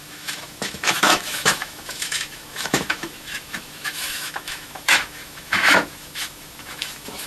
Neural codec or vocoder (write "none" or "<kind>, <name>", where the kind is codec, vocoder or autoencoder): autoencoder, DAC-VAE